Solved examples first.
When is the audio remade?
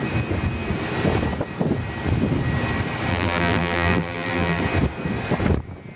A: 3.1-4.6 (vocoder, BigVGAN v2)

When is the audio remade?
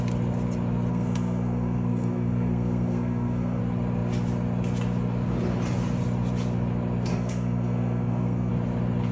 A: 0.9-3.6 (codec, SNAC); 7.1-8.5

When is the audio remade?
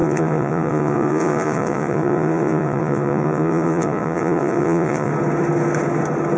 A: 0.0-5.1 (vocoder, Vocos)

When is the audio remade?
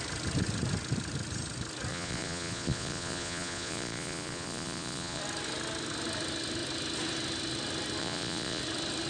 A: 1.9-5.2 (vocoder, Vocos); 8.0-8.6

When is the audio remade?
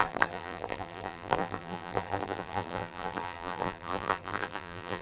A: 0.0-5.0 (vocoder, BigVGAN v2)